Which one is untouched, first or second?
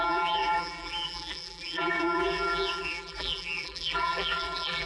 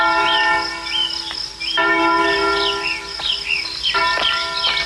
second